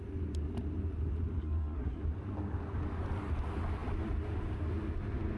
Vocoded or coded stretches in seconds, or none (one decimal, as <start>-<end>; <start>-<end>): 1.4-2.0